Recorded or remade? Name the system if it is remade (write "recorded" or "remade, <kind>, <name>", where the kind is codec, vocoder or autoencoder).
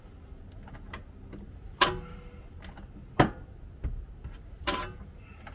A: recorded